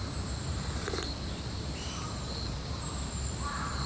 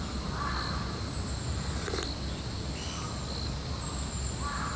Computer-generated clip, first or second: first